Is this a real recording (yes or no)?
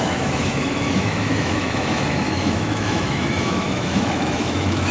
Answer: no